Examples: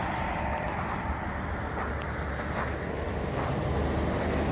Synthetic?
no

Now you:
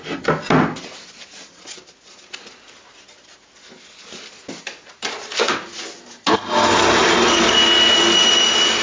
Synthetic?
no